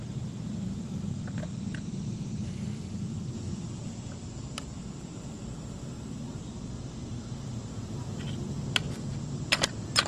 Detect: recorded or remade recorded